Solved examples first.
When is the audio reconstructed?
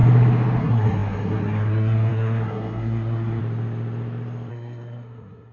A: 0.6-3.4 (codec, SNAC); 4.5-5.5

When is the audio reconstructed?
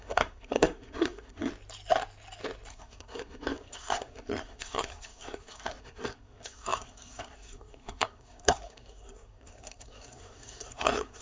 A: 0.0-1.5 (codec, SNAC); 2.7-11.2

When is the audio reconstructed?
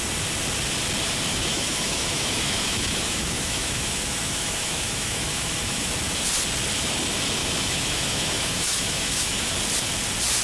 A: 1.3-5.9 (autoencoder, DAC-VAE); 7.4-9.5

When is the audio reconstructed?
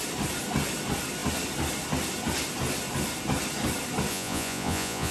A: 4.1-5.1 (vocoder, Vocos)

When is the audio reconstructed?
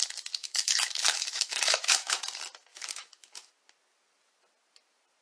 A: 0.4-2.2 (autoencoder, DAC-VAE); 2.7-3.5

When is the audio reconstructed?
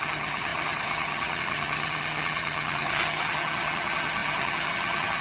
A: 0.0-5.2 (vocoder, HiFi-GAN)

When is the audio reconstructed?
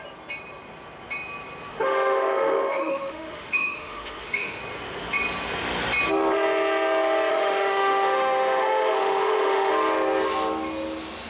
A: 1.7-4.6 (autoencoder, DAC-VAE); 7.3-9.7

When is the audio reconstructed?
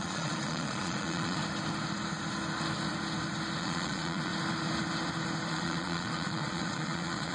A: 0.0-1.4 (vocoder, Vocos); 3.6-4.3; 5.5-7.3